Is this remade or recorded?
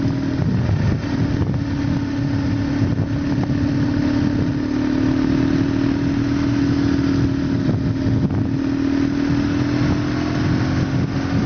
recorded